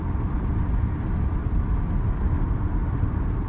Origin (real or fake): real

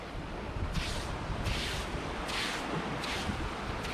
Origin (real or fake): real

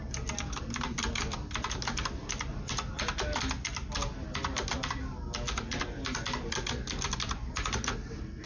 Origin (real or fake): real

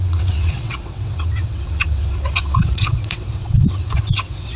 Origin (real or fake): fake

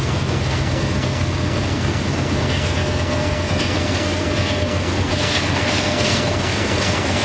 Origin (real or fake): fake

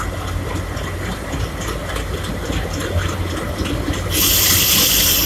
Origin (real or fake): real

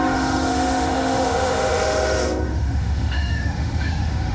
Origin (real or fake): fake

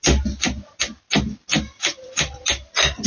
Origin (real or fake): real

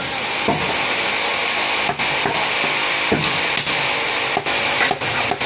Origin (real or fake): real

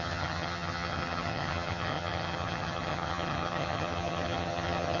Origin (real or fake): fake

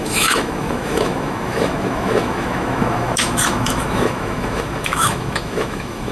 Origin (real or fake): fake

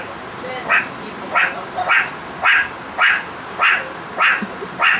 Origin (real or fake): real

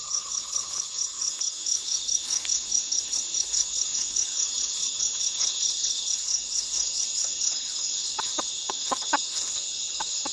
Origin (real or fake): fake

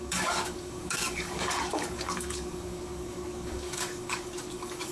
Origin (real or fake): fake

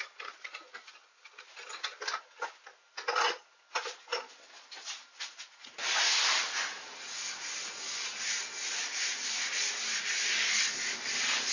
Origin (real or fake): real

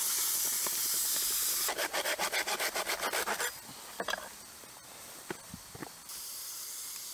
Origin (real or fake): real